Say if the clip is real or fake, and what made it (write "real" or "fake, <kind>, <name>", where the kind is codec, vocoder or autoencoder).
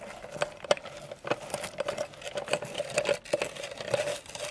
real